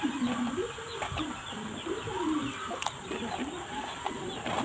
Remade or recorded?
recorded